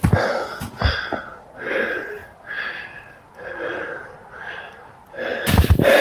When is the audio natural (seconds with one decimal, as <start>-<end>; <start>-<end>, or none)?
0.0-6.0